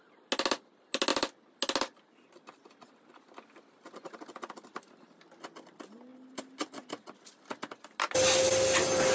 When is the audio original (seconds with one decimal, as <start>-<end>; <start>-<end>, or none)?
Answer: 0.0-9.1